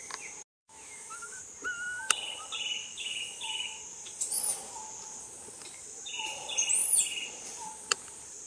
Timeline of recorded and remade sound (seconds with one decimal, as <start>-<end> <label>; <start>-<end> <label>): 0.0-0.6 recorded; 0.6-1.4 remade; 1.4-2.8 recorded; 2.8-3.8 remade; 3.8-8.5 recorded